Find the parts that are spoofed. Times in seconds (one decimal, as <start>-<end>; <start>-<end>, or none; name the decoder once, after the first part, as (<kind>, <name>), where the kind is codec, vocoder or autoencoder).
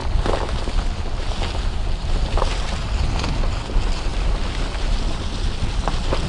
none